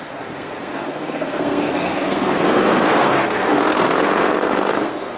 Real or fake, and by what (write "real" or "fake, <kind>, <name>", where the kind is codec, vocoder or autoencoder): fake, codec, SNAC